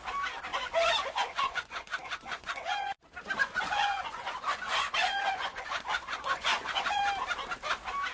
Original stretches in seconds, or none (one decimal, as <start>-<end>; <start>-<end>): 0.0-0.5; 3.0-3.4; 7.0-8.1

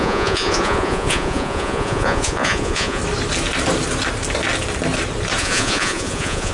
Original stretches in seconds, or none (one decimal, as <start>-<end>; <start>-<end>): 3.0-5.4

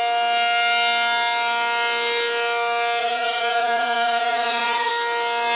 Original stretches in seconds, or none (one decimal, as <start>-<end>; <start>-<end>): 0.0-3.0; 4.9-5.6

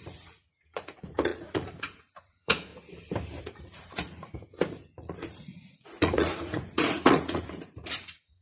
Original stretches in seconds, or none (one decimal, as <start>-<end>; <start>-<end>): 2.7-3.4

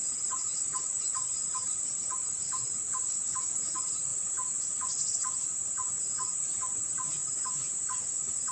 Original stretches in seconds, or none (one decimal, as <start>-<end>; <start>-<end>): 1.2-8.5